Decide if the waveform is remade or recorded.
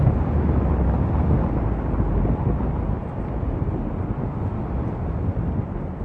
recorded